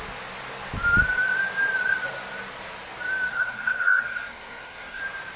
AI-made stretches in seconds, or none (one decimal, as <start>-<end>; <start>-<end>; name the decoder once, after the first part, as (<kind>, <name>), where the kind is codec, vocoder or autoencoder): 3.3-5.0 (codec, SNAC)